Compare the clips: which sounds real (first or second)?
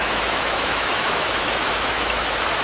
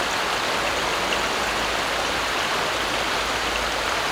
second